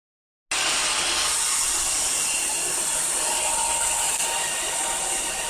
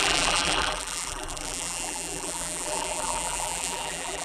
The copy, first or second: second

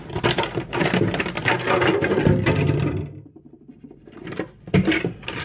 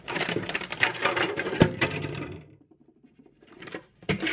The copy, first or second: second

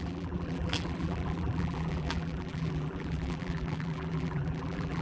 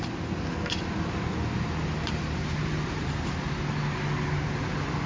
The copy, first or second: first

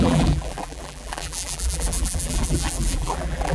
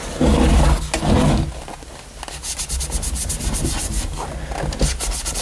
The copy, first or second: first